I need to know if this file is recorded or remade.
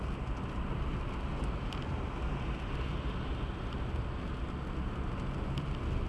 recorded